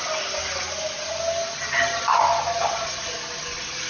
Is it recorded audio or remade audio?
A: recorded